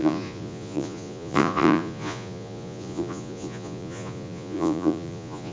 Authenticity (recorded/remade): remade